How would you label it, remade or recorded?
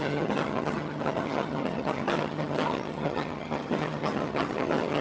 remade